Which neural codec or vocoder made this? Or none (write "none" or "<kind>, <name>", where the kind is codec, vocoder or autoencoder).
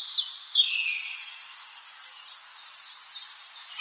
none